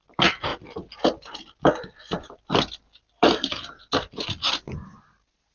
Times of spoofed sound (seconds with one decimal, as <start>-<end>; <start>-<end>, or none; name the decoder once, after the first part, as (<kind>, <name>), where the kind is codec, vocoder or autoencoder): none